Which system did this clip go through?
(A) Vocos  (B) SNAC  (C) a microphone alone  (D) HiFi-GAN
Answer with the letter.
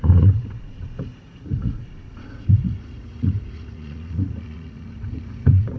A